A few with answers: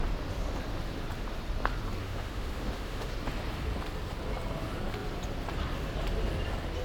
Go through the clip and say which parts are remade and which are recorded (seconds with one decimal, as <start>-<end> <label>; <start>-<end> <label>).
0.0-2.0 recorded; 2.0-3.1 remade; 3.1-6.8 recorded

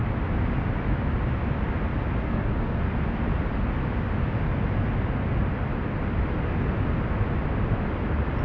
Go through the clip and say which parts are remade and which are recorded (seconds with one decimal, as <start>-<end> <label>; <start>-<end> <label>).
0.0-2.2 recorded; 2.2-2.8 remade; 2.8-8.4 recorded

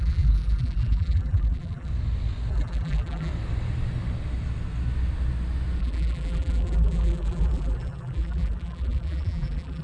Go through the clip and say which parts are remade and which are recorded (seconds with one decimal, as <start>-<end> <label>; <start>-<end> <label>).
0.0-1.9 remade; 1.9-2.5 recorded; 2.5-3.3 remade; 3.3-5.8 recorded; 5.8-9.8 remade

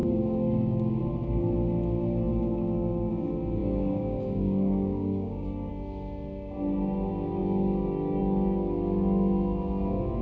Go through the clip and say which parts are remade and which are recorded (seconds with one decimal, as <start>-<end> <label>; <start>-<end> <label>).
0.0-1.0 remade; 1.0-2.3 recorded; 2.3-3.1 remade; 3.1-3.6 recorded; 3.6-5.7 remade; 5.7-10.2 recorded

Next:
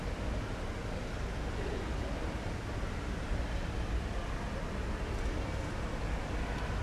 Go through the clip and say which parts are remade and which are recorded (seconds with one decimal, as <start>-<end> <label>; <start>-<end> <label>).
0.0-6.8 recorded